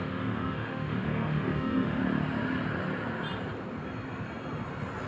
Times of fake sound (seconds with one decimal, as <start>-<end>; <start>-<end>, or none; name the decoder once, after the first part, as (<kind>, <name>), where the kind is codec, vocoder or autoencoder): 0.0-2.0 (autoencoder, DAC-VAE)